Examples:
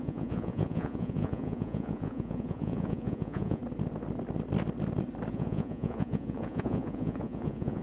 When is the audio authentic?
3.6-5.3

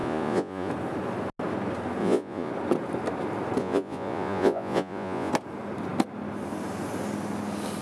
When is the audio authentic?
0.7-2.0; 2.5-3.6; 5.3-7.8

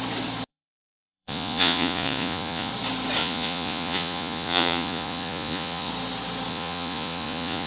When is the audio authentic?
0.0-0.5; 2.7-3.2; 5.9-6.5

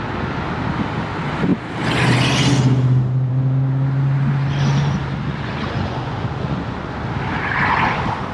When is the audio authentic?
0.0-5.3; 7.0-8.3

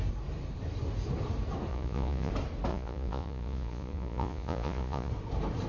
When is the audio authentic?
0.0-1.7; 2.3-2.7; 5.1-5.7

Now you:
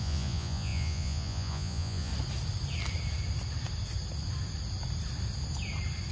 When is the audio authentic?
2.1-6.1